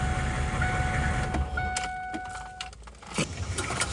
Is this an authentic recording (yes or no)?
yes